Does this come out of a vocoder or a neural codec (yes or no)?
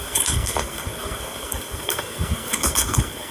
yes